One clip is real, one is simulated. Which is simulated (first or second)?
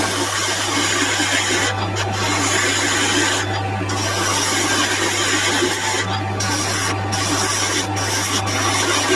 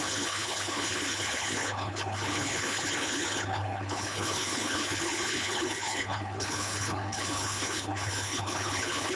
second